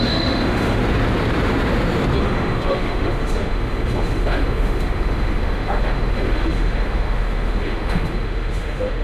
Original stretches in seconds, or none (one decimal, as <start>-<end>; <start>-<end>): 0.8-2.2